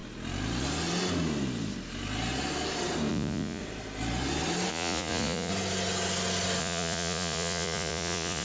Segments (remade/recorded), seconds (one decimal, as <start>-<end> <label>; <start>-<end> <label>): 0.0-3.1 recorded; 3.1-3.6 remade; 3.6-4.7 recorded; 4.7-5.5 remade; 5.5-6.6 recorded; 6.6-8.4 remade